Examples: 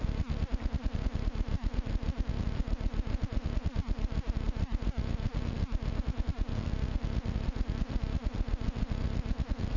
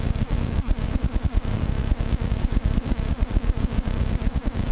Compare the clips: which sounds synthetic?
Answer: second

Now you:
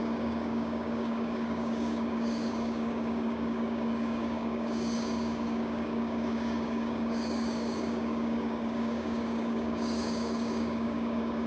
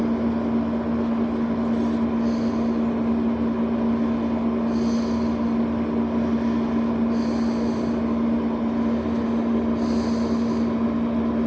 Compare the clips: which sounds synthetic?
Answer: first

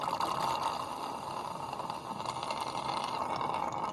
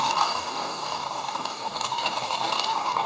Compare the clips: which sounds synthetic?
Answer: second